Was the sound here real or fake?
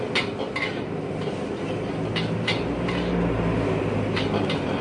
real